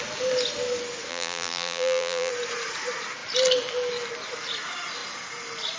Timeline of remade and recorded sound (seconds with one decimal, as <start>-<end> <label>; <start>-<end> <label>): 0.0-1.1 recorded; 1.1-2.3 remade; 2.3-5.8 recorded